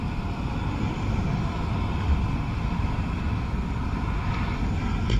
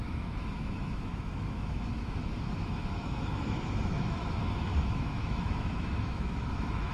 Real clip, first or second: first